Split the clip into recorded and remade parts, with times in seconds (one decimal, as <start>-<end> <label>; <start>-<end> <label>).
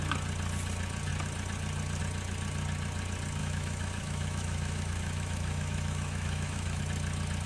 0.0-3.4 recorded; 3.4-6.8 remade; 6.8-7.5 recorded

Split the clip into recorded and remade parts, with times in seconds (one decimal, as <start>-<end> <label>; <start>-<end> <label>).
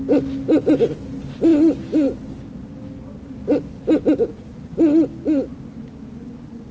0.0-6.7 recorded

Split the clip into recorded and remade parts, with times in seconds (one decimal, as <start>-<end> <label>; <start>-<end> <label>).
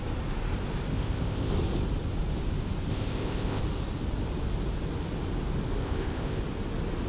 0.0-0.9 recorded; 0.9-1.5 remade; 1.5-2.9 recorded; 2.9-3.6 remade; 3.6-5.8 recorded; 5.8-6.4 remade; 6.4-7.1 recorded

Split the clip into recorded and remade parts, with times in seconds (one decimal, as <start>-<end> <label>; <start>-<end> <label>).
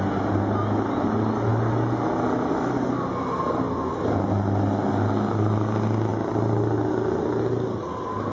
0.0-8.3 recorded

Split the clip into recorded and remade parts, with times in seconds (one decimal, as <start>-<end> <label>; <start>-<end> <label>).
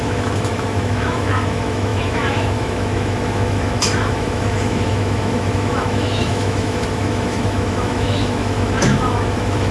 0.0-9.7 remade